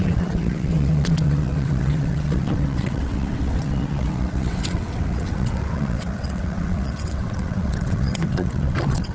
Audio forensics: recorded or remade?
remade